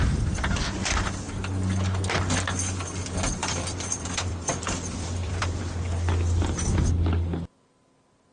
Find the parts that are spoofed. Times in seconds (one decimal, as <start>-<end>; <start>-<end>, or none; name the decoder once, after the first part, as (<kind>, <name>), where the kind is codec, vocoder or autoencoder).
3.4-5.6 (vocoder, BigVGAN v2)